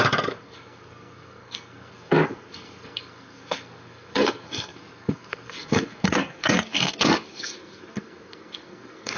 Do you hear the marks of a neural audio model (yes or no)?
yes